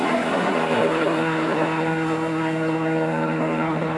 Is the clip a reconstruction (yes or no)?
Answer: yes